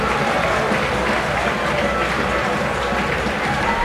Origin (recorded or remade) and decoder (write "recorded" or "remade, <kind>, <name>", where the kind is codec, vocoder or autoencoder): recorded